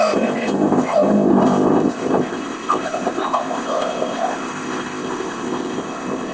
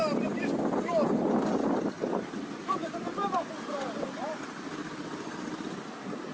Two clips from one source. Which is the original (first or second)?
second